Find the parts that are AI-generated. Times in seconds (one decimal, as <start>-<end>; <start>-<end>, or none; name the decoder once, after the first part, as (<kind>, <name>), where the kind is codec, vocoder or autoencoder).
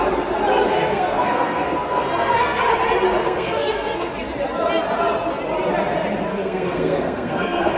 0.7-2.6 (codec, SNAC); 3.2-4.1; 6.3-7.8